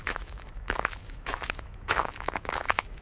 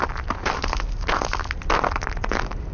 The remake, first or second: first